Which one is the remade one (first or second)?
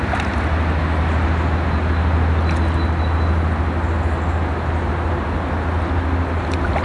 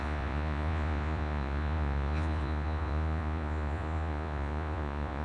second